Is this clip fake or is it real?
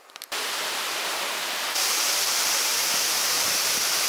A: fake